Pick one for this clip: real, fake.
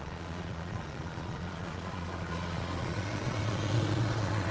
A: fake